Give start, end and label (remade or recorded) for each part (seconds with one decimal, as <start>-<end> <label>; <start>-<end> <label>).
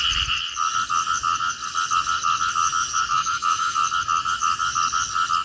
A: 0.0-3.1 recorded; 3.1-3.8 remade; 3.8-5.4 recorded